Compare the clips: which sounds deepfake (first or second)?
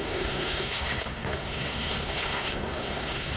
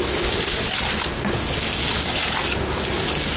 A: first